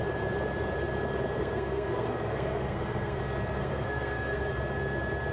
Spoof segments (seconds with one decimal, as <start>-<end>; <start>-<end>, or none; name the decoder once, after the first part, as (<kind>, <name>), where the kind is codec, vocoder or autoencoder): 1.4-3.2 (codec, SNAC); 3.6-4.5